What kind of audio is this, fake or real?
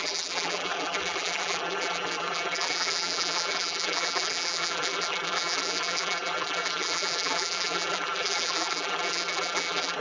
fake